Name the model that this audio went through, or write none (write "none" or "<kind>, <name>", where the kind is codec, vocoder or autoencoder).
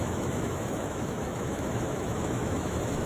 autoencoder, DAC-VAE